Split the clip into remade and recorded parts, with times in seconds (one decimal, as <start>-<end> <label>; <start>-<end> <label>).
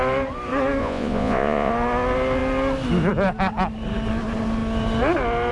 0.0-0.8 recorded; 0.8-1.7 remade; 1.7-5.5 recorded